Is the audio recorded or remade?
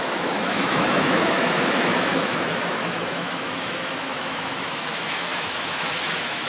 remade